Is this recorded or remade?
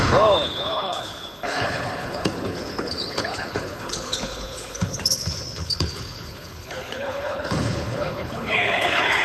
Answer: remade